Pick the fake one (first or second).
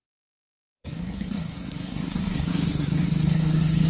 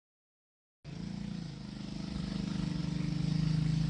first